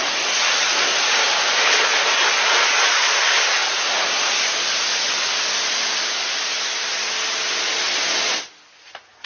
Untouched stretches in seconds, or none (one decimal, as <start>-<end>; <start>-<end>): 0.0-9.3